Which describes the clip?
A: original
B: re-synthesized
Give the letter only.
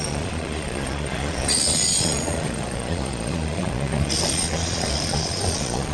B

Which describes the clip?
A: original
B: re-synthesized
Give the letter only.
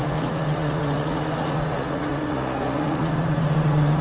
B